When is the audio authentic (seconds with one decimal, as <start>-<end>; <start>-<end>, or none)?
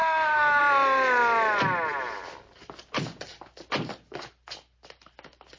0.6-5.6